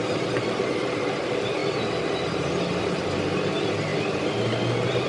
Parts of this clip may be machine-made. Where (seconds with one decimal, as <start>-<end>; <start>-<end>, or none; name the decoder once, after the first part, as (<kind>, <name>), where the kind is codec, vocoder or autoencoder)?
none